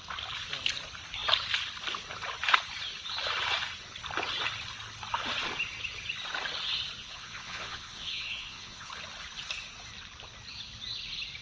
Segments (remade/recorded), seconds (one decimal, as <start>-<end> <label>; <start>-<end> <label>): 0.0-7.0 recorded; 7.0-8.9 remade; 8.9-11.4 recorded

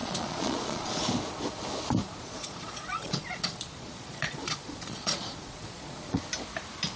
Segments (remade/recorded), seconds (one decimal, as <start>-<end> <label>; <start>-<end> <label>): 0.0-1.0 remade; 1.0-2.0 recorded; 2.0-6.2 remade; 6.2-7.0 recorded

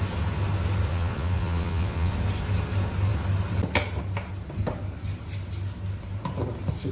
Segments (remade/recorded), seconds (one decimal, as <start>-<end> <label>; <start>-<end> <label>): 0.0-0.9 recorded; 0.9-2.1 remade; 2.1-6.9 recorded

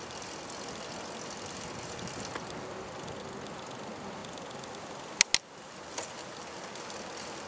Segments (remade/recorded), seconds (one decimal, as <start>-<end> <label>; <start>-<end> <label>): 0.0-7.5 recorded